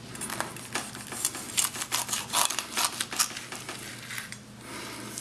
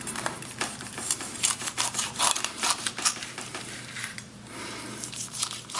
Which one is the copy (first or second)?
second